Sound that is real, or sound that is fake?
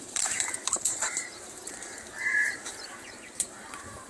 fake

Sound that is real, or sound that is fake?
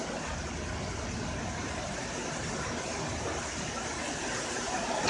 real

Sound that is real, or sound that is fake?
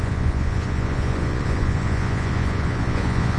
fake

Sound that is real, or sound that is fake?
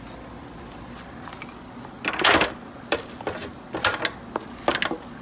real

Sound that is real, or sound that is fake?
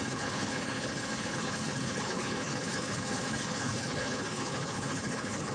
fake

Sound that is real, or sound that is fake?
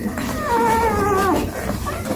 real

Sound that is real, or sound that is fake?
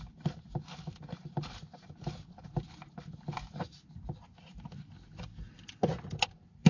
real